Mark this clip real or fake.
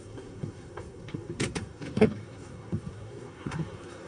fake